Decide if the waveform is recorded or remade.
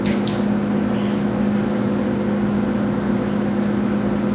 recorded